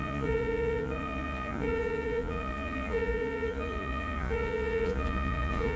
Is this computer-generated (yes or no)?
yes